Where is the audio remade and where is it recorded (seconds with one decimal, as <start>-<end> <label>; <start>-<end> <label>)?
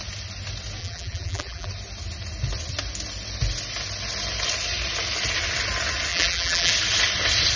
0.0-0.8 recorded; 0.8-1.7 remade; 1.7-6.1 recorded; 6.1-6.7 remade; 6.7-7.6 recorded